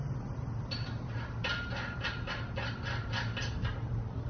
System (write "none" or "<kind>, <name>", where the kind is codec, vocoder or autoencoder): none